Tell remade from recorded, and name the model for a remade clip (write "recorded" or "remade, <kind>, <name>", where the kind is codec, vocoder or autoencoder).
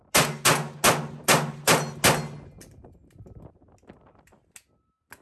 recorded